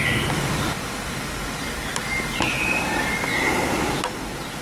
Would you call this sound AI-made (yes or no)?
no